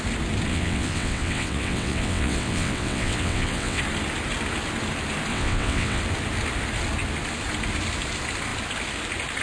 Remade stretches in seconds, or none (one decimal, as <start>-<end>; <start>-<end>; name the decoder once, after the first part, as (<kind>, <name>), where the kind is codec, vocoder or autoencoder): 0.5-3.8 (vocoder, WaveNeXt); 5.3-6.0